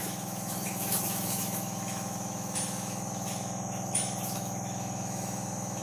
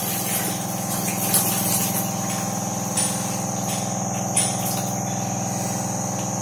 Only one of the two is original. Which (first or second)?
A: second